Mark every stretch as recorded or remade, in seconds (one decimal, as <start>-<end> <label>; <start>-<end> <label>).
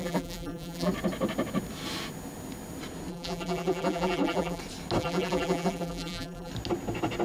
0.0-0.9 remade; 0.9-3.1 recorded; 3.1-4.6 remade; 4.6-5.0 recorded; 5.0-6.5 remade; 6.5-7.2 recorded